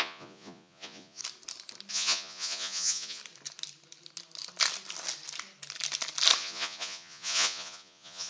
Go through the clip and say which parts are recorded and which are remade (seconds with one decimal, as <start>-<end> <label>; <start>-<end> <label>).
0.0-1.2 remade; 1.2-1.9 recorded; 1.9-3.2 remade; 3.2-6.4 recorded; 6.4-8.3 remade